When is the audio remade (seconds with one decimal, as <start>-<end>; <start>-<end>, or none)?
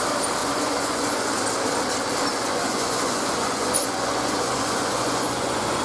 0.4-1.3; 2.3-5.8